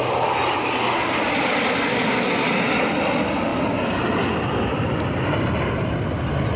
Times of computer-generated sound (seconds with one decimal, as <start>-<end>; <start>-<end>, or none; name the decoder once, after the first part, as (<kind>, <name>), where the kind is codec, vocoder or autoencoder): none